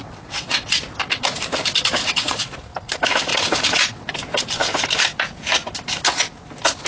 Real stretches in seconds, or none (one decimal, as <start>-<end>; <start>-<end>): 0.8-2.0; 2.5-3.3; 4.1-6.9